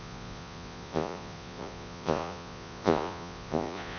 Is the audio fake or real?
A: fake